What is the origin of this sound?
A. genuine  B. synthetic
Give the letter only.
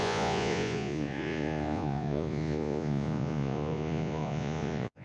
B